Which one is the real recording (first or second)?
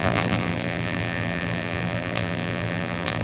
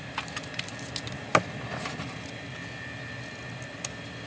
second